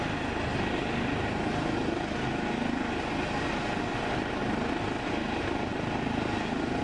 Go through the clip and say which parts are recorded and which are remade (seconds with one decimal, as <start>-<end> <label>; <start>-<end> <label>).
0.0-6.8 recorded